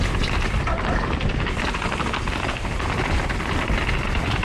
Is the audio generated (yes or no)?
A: no